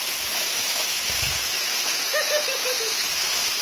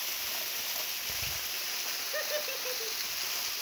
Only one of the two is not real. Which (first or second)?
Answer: first